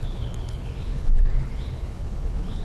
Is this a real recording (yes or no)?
no